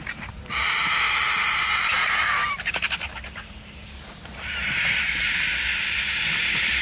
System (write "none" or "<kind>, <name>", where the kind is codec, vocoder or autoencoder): none